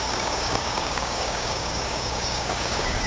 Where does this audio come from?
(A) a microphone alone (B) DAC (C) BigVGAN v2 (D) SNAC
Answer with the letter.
B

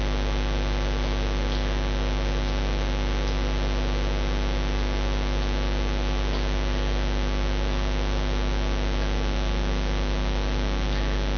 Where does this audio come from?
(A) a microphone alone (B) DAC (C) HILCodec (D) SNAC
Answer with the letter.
A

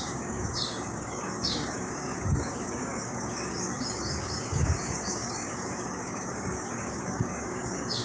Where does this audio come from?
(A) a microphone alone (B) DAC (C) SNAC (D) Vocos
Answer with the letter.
B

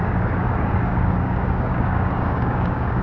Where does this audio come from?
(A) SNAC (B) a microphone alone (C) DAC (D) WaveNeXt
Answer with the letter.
C